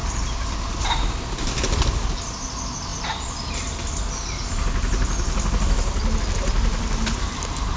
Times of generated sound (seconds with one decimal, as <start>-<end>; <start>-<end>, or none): none